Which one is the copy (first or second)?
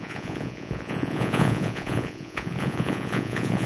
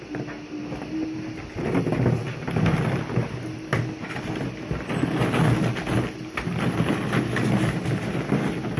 first